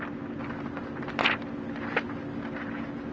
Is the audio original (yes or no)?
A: yes